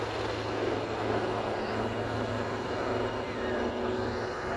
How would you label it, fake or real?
real